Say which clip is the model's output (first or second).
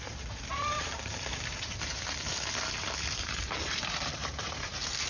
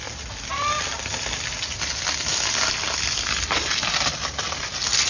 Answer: first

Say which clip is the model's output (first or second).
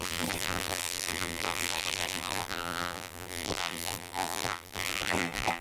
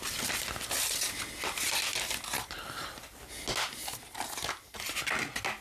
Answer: first